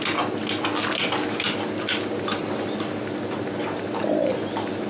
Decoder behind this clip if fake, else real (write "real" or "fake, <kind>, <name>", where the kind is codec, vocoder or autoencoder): real